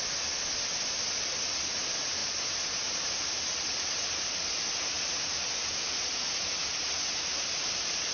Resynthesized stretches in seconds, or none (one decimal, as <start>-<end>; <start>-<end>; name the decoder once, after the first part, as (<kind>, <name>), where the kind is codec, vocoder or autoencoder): none